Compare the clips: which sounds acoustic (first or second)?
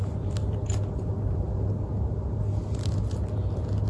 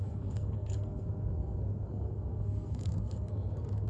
first